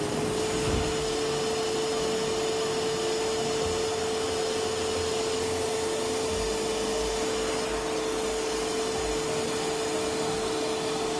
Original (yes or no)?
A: yes